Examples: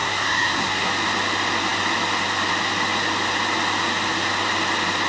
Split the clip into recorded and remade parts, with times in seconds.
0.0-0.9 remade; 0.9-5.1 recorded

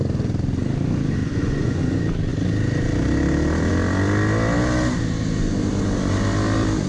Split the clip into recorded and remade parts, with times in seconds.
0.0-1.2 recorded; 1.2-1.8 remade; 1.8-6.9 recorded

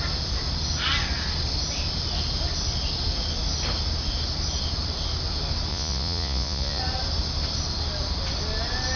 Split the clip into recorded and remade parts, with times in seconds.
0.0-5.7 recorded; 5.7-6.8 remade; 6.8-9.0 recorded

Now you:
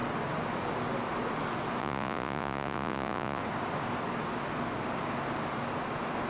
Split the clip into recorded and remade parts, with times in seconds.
0.0-1.8 recorded; 1.8-3.4 remade; 3.4-6.3 recorded

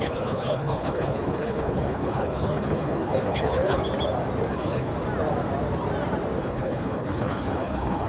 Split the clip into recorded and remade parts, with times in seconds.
0.0-3.8 remade; 3.8-4.5 recorded; 4.5-4.9 remade; 4.9-6.4 recorded; 6.4-8.1 remade